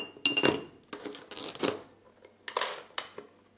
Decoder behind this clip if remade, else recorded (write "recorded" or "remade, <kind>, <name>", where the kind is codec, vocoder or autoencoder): recorded